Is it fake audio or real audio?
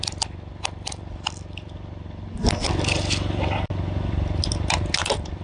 fake